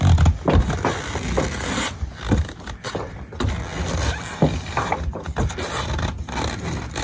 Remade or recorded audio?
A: recorded